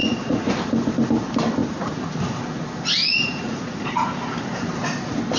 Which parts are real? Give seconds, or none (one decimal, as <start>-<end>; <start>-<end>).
0.5-1.6; 2.2-3.0; 3.9-5.4